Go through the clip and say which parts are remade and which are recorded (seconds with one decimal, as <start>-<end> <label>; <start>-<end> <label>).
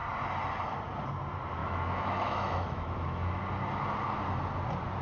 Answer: 0.0-1.6 recorded; 1.6-3.4 remade; 3.4-5.0 recorded